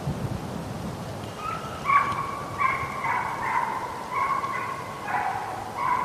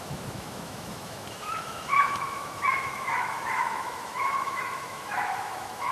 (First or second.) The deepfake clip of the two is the second